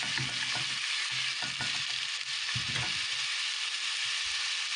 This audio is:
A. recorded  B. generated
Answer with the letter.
A